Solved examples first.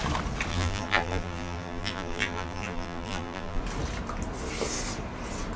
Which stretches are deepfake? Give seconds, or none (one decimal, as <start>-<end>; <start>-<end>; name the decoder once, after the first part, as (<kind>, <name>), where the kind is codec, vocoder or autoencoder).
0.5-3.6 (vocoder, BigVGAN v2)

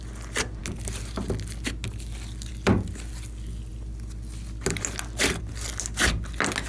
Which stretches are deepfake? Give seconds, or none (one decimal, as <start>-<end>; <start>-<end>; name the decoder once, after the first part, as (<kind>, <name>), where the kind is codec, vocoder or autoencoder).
none

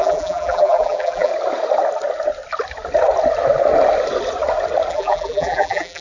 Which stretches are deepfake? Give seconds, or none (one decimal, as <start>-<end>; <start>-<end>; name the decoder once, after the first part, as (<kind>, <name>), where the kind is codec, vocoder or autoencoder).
0.0-1.3 (vocoder, BigVGAN v2); 4.9-6.0

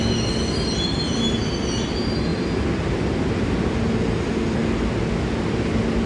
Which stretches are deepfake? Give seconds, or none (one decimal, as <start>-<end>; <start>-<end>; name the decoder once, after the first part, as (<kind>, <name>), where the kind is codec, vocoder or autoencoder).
2.3-3.7 (vocoder, BigVGAN v2)

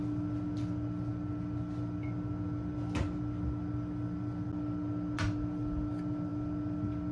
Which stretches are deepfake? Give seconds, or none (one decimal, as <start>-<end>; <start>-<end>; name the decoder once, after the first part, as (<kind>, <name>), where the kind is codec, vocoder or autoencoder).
none

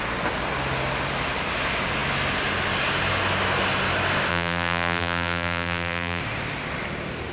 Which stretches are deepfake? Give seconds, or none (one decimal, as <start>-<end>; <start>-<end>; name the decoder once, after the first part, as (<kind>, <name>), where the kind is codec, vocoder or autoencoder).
4.3-6.2 (vocoder, BigVGAN v2)

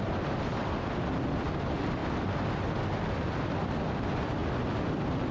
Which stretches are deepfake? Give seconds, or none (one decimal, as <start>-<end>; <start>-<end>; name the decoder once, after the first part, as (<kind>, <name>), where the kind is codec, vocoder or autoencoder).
0.0-2.0 (vocoder, BigVGAN v2); 3.2-5.3

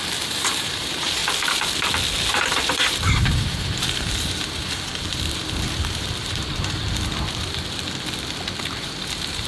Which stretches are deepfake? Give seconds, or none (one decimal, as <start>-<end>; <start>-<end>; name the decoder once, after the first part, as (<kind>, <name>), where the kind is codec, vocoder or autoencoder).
0.0-1.2 (vocoder, BigVGAN v2); 2.3-6.8; 8.6-9.5